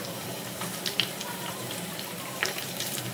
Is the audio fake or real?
fake